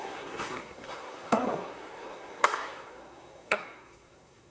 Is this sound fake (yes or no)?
yes